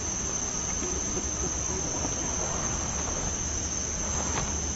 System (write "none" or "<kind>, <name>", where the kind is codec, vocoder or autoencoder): none